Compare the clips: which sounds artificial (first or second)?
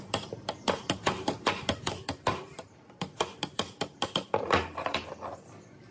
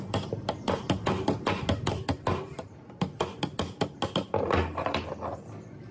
first